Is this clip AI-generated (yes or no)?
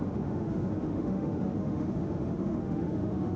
yes